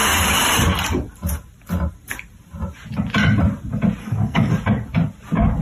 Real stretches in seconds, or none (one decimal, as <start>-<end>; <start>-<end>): 0.0-4.0; 4.5-5.6